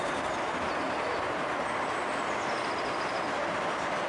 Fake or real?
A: real